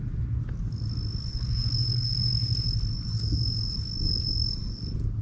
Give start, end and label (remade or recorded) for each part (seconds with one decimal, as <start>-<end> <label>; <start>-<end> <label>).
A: 0.0-1.3 recorded; 1.3-2.1 remade; 2.1-5.2 recorded